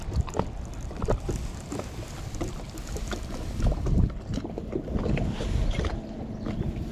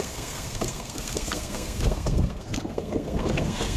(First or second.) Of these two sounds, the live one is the first